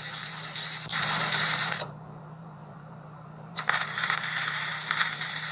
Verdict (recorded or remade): remade